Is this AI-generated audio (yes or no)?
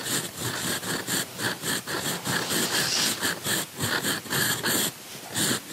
no